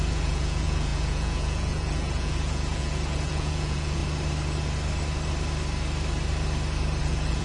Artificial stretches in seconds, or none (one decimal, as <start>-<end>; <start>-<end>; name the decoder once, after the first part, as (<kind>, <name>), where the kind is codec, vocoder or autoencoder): 0.0-4.0 (vocoder, Vocos); 7.0-7.4